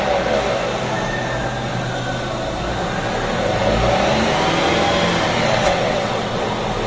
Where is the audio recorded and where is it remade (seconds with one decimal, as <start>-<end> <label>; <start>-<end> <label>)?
0.0-5.4 recorded; 5.4-6.5 remade; 6.5-6.9 recorded